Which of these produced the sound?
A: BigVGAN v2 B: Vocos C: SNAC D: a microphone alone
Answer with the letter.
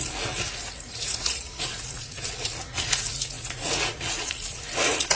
B